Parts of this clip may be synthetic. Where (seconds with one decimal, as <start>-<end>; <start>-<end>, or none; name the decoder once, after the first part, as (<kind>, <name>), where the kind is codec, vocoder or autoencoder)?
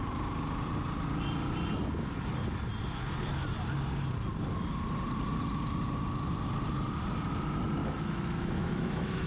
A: 7.8-9.3 (autoencoder, DAC-VAE)